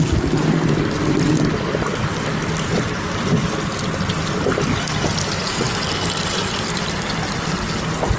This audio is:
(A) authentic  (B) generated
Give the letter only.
A